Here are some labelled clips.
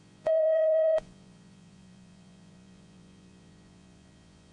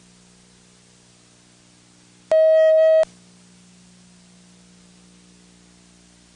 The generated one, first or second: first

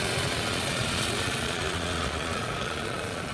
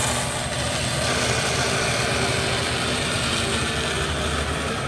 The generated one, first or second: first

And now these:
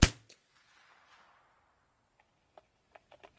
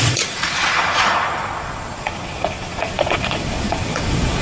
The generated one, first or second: second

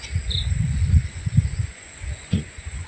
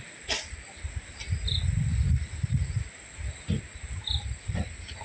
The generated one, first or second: first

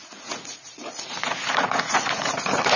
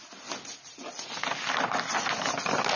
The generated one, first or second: first